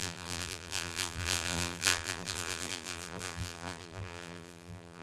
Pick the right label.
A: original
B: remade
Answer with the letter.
B